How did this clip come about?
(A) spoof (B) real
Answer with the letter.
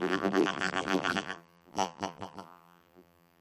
A